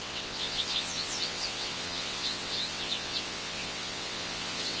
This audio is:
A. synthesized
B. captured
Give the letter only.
A